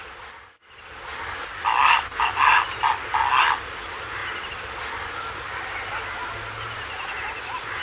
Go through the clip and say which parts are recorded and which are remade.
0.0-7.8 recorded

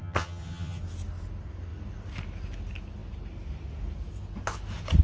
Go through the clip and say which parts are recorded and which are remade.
0.0-0.8 remade; 0.8-5.0 recorded

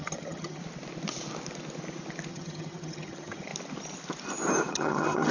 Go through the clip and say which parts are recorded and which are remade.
0.0-0.6 remade; 0.6-2.3 recorded; 2.3-3.5 remade; 3.5-4.7 recorded; 4.7-5.3 remade

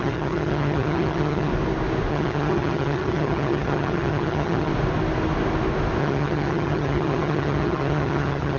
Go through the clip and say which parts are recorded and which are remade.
0.0-1.5 remade; 1.5-2.1 recorded; 2.1-4.7 remade; 4.7-6.0 recorded; 6.0-8.6 remade

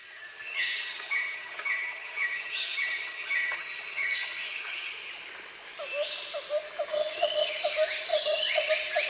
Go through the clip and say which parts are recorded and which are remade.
0.0-4.9 remade; 4.9-6.9 recorded; 6.9-7.6 remade; 7.6-8.1 recorded; 8.1-8.7 remade; 8.7-9.1 recorded

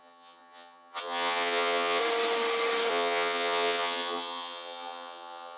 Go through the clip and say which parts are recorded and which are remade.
0.0-2.0 remade; 2.0-2.9 recorded; 2.9-5.6 remade

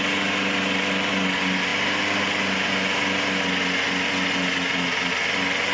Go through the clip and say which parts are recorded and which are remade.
0.0-5.7 recorded

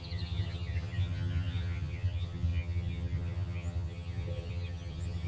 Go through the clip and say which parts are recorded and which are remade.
0.0-5.3 remade